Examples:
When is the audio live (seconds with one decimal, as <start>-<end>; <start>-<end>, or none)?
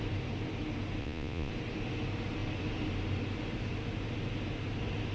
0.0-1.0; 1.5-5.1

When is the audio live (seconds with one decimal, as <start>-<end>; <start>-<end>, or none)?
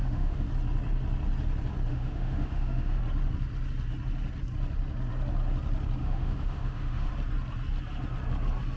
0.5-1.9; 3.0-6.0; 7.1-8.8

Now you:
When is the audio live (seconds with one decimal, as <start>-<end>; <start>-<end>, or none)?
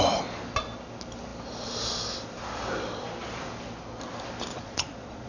0.0-4.5